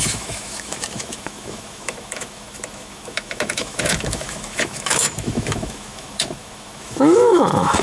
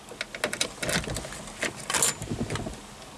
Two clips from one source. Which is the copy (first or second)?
first